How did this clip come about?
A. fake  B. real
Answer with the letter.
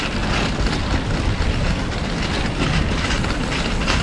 B